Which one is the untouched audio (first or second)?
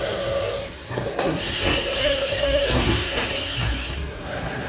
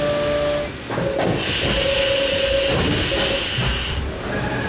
second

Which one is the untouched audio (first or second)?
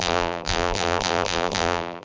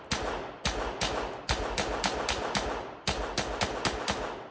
second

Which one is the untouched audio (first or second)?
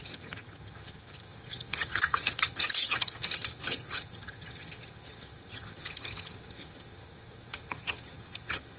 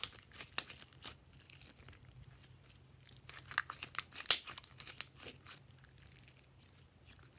second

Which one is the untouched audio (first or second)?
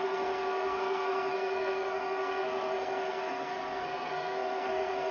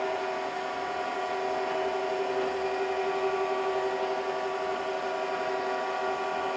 second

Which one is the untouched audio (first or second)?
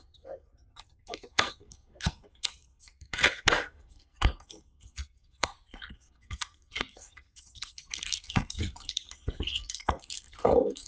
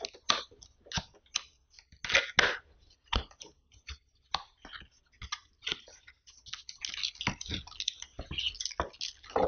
second